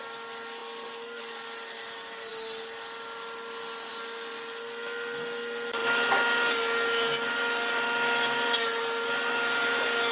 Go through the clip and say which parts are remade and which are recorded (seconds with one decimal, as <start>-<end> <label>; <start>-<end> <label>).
0.0-10.1 recorded